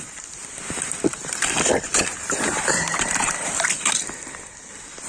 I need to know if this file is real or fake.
fake